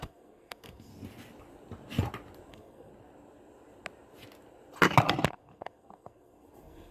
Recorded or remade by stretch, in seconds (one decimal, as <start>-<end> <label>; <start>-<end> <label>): 0.0-0.9 remade; 0.9-2.5 recorded; 2.5-2.9 remade; 2.9-5.3 recorded; 5.3-6.9 remade